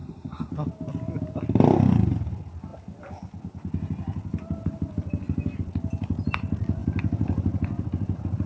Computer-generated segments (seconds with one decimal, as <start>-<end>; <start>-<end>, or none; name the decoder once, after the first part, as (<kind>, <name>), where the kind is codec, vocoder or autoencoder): 0.0-0.5 (codec, SNAC)